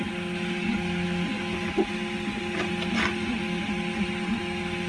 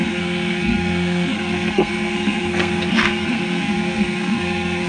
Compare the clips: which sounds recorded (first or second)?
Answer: first